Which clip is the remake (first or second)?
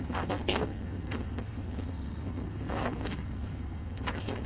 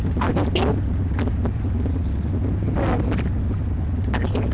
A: first